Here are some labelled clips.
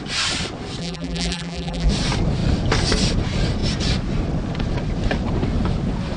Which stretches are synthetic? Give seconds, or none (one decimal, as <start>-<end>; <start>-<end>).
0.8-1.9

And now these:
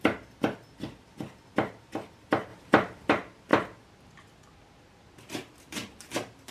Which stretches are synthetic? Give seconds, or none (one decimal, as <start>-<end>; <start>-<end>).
none

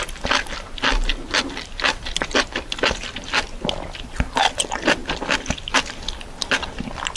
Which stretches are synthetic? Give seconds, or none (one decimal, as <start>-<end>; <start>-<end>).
none

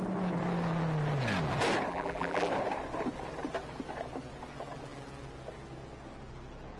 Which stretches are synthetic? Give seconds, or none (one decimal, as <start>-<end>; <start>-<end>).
1.9-2.5

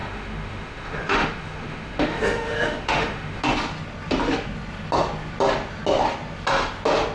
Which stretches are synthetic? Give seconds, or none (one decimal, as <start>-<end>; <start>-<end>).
0.0-3.4